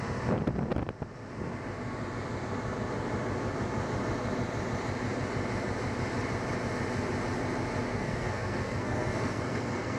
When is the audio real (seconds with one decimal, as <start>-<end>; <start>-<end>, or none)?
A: 0.0-7.9